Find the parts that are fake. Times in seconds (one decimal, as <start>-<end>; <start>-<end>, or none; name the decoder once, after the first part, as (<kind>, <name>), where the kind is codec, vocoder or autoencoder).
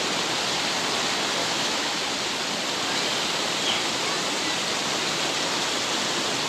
1.4-2.0 (autoencoder, DAC-VAE)